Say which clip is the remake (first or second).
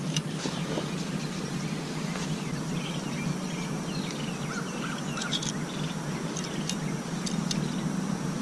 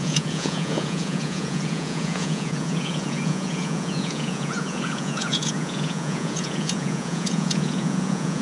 second